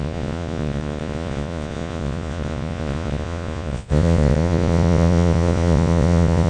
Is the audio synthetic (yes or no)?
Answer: yes